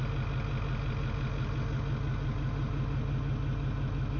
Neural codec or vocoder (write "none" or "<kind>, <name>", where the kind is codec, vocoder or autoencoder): none